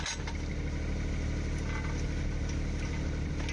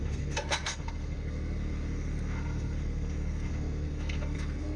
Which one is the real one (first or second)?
first